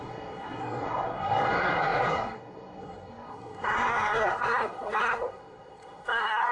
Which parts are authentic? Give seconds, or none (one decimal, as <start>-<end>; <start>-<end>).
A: none